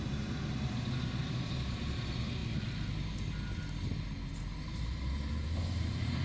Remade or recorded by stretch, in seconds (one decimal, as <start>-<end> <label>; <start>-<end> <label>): 0.0-2.4 remade; 2.4-4.8 recorded; 4.8-6.2 remade